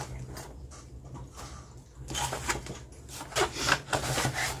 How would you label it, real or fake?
real